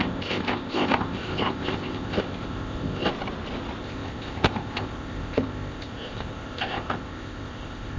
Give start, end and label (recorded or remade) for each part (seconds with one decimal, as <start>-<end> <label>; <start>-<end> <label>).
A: 0.0-3.1 remade; 3.1-3.8 recorded; 3.8-8.0 remade

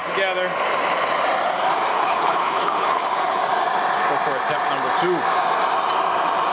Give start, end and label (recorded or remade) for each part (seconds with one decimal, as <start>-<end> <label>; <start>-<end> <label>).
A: 0.0-1.9 recorded; 1.9-3.4 remade; 3.4-6.5 recorded

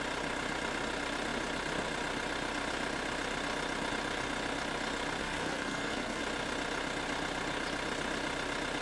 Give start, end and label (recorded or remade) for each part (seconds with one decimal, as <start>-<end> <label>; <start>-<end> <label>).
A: 0.0-5.2 recorded; 5.2-6.2 remade; 6.2-8.8 recorded

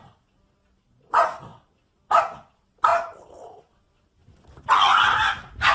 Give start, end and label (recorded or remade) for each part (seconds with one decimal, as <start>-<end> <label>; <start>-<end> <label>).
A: 0.0-5.7 recorded

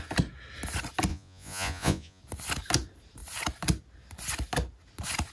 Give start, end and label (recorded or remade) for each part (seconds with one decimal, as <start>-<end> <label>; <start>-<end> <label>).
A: 0.0-1.1 recorded; 1.1-2.2 remade; 2.2-5.3 recorded

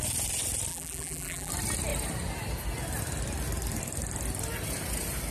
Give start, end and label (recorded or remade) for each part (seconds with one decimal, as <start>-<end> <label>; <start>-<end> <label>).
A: 0.0-0.7 recorded; 0.7-1.5 remade; 1.5-5.3 recorded

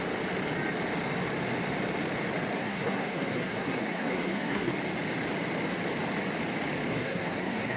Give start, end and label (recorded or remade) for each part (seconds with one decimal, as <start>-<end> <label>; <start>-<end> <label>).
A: 0.0-2.5 recorded; 2.5-4.7 remade; 4.7-6.9 recorded; 6.9-7.8 remade